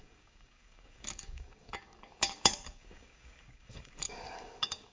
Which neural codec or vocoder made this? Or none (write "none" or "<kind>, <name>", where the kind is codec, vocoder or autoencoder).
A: codec, DAC